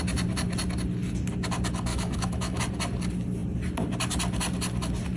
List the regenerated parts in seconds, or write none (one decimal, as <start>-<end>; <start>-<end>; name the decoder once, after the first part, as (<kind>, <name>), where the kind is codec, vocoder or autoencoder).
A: 1.9-2.6 (autoencoder, DAC-VAE)